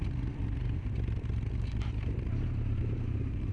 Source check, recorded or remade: recorded